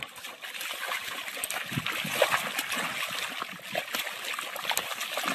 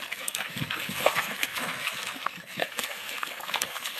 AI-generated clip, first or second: second